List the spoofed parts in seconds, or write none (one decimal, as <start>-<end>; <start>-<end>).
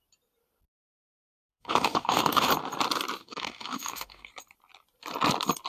1.5-2.5; 3.2-4.3